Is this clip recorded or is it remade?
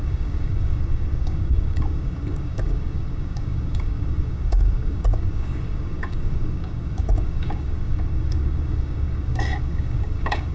remade